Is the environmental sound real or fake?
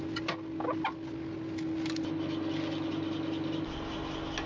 real